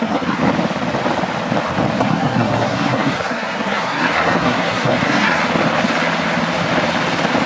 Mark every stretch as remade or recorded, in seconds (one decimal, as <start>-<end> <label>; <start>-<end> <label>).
0.0-0.4 remade; 0.4-2.0 recorded; 2.0-5.4 remade; 5.4-7.5 recorded